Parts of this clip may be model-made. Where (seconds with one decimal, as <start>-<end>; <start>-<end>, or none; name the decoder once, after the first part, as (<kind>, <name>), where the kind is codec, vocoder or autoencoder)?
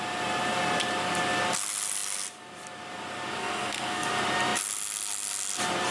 3.4-4.1 (codec, SNAC)